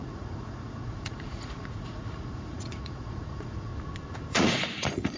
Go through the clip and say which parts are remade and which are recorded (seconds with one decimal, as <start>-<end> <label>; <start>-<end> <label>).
0.0-3.7 remade; 3.7-4.3 recorded; 4.3-5.2 remade